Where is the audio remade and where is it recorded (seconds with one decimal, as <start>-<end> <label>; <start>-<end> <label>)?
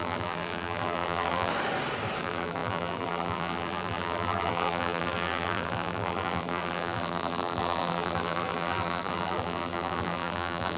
0.0-1.5 remade; 1.5-2.2 recorded; 2.2-10.8 remade